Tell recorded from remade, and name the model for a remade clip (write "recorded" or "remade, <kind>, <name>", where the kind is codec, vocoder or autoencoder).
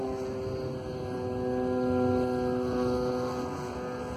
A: recorded